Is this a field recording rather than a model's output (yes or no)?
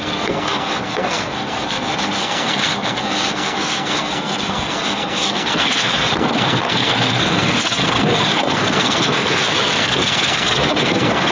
no